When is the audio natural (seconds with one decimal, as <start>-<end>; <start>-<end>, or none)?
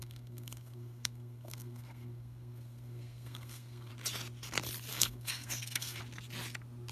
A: 3.9-4.9; 6.0-6.9